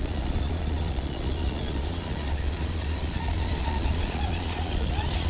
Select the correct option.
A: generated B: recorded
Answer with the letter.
A